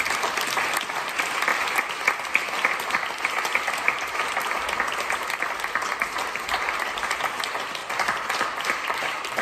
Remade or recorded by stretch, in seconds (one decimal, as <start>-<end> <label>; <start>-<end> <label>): 0.0-9.4 recorded